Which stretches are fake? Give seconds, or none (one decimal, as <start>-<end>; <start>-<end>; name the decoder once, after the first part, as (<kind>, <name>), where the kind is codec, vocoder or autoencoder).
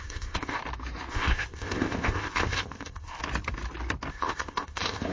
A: 0.0-0.6 (codec, ZipCodec); 1.1-3.2; 4.1-5.1